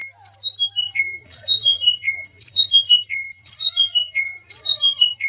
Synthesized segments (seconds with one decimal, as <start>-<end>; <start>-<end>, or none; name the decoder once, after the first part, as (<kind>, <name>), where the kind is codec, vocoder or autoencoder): 0.8-5.3 (vocoder, Vocos)

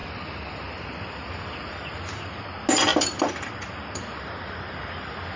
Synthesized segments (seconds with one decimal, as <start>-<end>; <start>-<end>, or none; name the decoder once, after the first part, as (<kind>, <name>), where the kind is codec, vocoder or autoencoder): 0.0-2.3 (vocoder, BigVGAN v2); 2.9-3.5

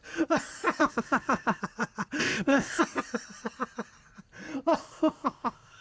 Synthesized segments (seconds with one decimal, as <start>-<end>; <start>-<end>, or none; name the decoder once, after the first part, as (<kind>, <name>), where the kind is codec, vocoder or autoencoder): 0.8-1.6 (codec, ZipCodec); 2.2-2.8; 4.8-5.8

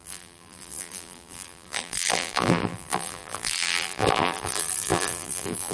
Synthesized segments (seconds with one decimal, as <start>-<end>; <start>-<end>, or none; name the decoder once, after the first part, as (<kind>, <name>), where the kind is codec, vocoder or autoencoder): 0.0-5.7 (vocoder, BigVGAN v2)

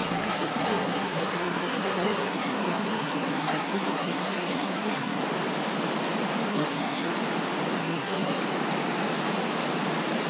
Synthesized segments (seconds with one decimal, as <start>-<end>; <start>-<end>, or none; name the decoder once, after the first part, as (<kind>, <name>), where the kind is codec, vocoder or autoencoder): 0.0-5.2 (codec, SNAC); 6.5-7.1; 7.8-8.4

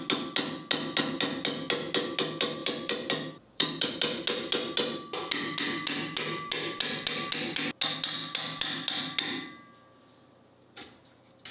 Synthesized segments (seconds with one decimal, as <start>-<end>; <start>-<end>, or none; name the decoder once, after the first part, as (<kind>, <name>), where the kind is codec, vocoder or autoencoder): 2.6-3.9 (vocoder, BigVGAN v2)